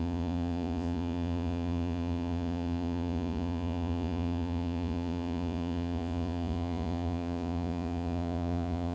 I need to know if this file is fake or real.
fake